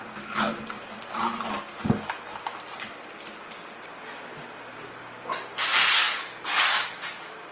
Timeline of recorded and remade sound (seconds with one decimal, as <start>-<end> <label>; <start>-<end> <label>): 0.0-5.7 recorded; 5.7-7.0 remade; 7.0-7.5 recorded